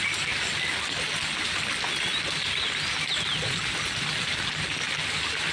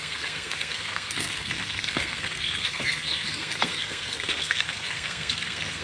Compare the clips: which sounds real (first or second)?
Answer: first